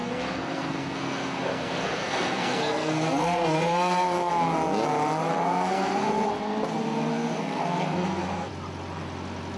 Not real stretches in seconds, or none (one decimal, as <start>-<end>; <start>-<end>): 0.0-4.3; 5.3-6.3; 7.1-8.5